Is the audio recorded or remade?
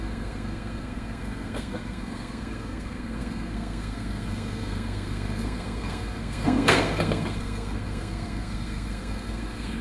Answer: remade